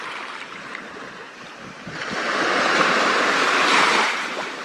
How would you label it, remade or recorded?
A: remade